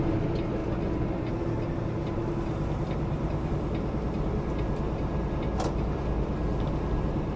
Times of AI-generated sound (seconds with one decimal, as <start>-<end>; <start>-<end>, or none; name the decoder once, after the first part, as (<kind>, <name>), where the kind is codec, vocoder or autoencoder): none